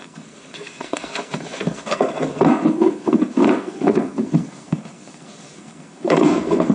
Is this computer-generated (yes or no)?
yes